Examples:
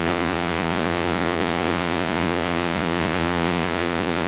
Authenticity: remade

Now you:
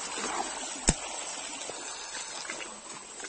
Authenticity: recorded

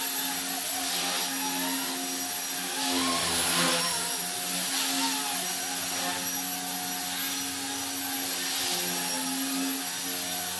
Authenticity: recorded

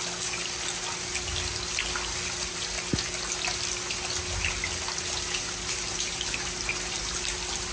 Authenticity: recorded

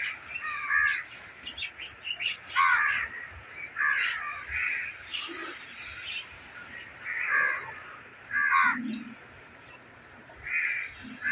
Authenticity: recorded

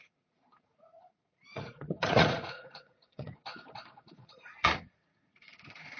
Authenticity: remade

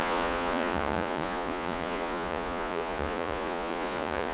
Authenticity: remade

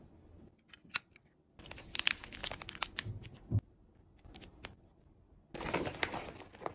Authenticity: recorded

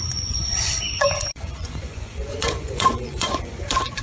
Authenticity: remade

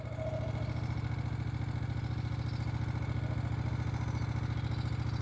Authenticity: recorded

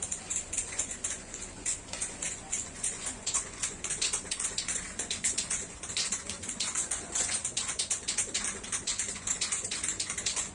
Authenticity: remade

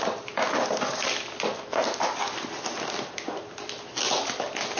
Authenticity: recorded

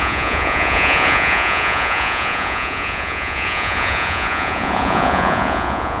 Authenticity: remade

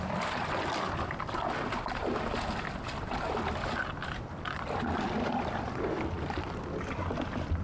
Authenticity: recorded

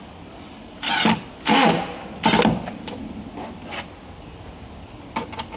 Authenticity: recorded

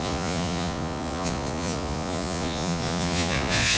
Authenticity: remade